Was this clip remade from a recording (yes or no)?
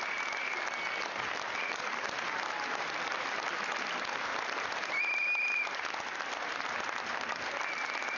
no